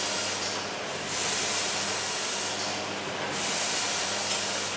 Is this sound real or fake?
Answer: real